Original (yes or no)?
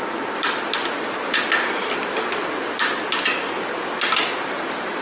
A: yes